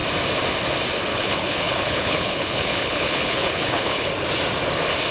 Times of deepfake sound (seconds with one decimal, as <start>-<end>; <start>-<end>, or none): 1.1-4.1